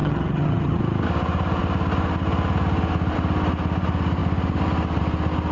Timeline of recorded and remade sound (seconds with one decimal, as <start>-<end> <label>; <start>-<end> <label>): 0.0-0.8 remade; 0.8-5.5 recorded